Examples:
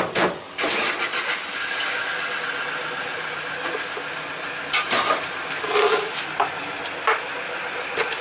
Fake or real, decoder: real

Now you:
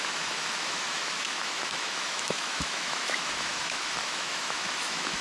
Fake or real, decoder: fake, autoencoder, DAC-VAE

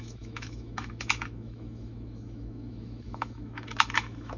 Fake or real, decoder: fake, autoencoder, DAC-VAE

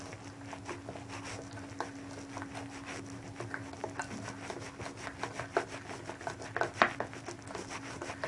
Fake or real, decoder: real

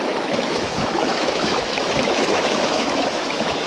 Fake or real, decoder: fake, autoencoder, DAC-VAE